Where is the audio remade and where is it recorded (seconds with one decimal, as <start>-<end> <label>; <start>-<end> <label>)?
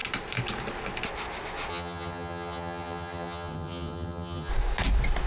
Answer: 0.0-1.7 recorded; 1.7-4.5 remade; 4.5-5.3 recorded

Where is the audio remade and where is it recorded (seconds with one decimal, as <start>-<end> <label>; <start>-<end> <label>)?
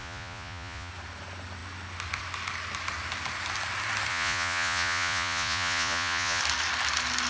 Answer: 0.0-0.9 remade; 0.9-4.1 recorded; 4.1-6.4 remade; 6.4-7.3 recorded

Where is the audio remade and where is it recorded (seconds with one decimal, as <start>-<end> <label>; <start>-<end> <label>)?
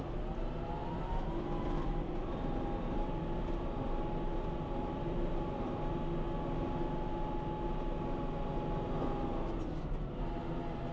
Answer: 0.0-0.8 recorded; 0.8-5.9 remade; 5.9-10.9 recorded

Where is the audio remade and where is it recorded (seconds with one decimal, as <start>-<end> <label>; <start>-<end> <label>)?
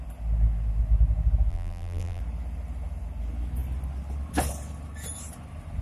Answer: 0.0-1.5 recorded; 1.5-2.2 remade; 2.2-5.8 recorded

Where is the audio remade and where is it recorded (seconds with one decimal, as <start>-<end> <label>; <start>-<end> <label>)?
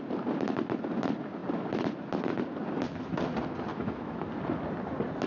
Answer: 0.0-3.7 recorded; 3.7-4.3 remade; 4.3-5.3 recorded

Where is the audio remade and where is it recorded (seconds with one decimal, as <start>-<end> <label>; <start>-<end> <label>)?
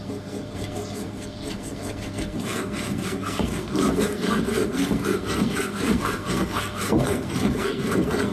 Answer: 0.0-8.3 remade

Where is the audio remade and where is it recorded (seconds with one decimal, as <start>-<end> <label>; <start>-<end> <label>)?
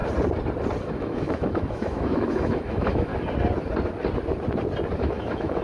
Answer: 0.0-0.8 recorded; 0.8-3.1 remade; 3.1-5.0 recorded; 5.0-5.6 remade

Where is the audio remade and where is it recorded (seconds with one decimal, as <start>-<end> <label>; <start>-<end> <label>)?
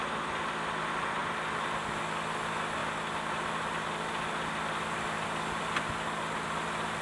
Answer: 0.0-7.0 recorded